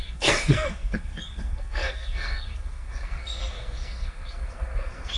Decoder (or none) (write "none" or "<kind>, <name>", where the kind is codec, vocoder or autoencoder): codec, SNAC